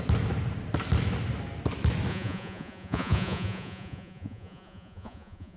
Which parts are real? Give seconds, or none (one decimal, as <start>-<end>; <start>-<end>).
0.0-2.1

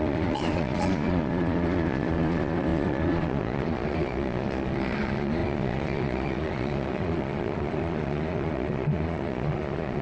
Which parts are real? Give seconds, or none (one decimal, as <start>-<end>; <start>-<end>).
none

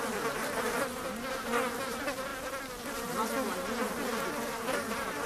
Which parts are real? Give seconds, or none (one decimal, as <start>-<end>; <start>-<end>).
0.0-5.3

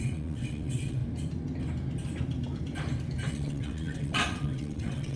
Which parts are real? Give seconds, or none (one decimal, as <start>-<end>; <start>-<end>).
1.0-3.3

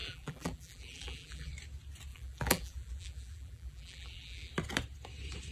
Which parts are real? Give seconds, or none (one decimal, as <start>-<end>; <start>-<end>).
1.5-2.1; 4.5-5.5